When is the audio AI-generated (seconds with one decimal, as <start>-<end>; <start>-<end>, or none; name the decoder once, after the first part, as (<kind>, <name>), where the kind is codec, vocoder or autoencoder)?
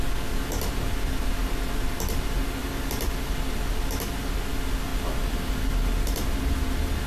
2.6-3.3 (vocoder, BigVGAN v2)